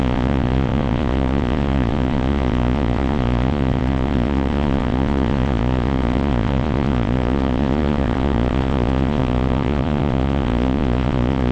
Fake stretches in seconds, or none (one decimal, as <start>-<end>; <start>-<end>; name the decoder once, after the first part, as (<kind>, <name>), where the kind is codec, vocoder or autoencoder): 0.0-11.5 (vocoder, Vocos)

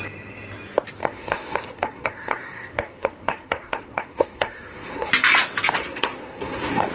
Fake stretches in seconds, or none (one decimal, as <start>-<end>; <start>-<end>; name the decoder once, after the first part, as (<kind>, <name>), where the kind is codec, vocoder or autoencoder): 1.0-5.1 (codec, SNAC); 5.8-6.9

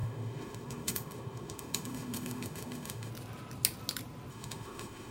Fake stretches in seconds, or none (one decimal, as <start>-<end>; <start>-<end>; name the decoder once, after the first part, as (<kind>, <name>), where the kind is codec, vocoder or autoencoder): 0.0-3.1 (autoencoder, DAC-VAE); 4.3-5.1